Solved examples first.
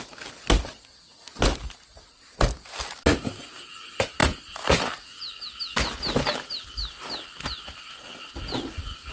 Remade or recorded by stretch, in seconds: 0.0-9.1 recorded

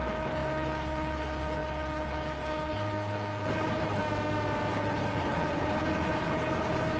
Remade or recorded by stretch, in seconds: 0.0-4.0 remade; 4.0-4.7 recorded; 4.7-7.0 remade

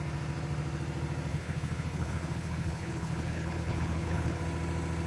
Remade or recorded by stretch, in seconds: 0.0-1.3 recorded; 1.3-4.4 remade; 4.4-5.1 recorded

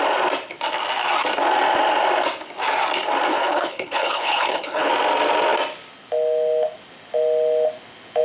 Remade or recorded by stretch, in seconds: 0.0-3.3 recorded; 3.3-4.9 remade; 4.9-8.2 recorded

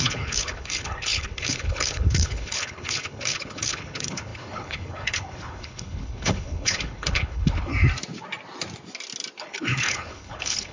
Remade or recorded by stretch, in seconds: 0.0-7.7 remade; 7.7-9.4 recorded; 9.4-10.7 remade